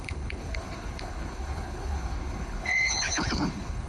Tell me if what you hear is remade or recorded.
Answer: remade